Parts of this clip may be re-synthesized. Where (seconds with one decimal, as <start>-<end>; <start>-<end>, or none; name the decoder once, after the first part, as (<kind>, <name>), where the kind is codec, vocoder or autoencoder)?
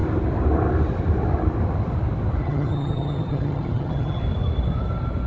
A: 2.4-4.2 (vocoder, HiFi-GAN)